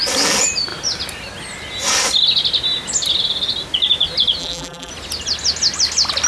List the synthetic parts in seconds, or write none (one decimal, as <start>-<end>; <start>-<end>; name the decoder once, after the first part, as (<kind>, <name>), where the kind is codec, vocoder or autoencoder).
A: 4.4-4.9 (vocoder, BigVGAN v2)